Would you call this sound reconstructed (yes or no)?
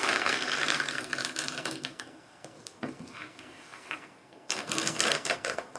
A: yes